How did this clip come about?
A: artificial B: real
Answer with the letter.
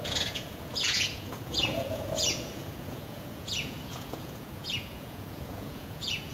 A